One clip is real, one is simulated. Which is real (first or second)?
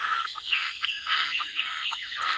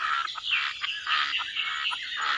second